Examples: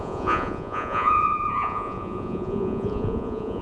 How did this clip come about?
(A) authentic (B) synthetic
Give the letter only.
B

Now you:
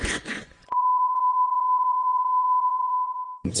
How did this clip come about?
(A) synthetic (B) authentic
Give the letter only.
A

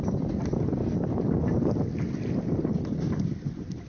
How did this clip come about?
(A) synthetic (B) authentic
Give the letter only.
B